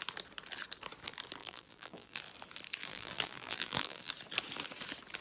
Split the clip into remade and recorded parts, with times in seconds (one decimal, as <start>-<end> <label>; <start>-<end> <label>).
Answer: 0.0-1.4 recorded; 1.4-2.2 remade; 2.2-2.8 recorded; 2.8-4.1 remade; 4.1-5.2 recorded